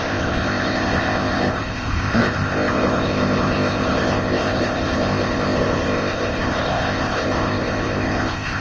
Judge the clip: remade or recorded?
remade